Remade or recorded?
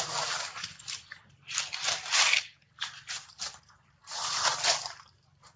recorded